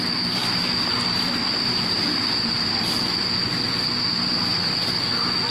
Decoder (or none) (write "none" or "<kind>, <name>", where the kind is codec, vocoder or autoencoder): none